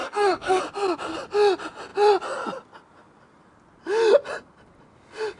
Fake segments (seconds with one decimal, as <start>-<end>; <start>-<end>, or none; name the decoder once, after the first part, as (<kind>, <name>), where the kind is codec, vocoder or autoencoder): 0.0-0.6 (codec, DAC)

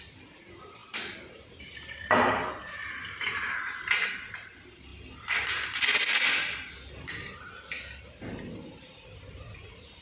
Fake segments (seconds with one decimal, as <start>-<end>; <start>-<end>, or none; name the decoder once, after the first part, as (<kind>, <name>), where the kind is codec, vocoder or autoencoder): none

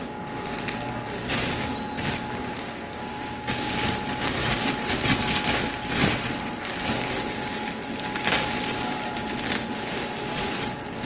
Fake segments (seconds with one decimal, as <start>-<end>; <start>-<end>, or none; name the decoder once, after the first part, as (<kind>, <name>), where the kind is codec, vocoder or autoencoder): 2.4-3.7 (codec, DAC)

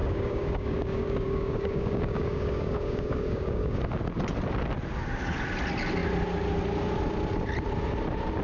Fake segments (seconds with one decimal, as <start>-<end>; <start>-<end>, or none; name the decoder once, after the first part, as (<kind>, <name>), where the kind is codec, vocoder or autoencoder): 0.0-3.8 (codec, DAC)